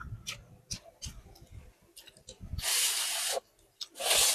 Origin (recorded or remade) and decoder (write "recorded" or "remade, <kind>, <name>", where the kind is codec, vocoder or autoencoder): recorded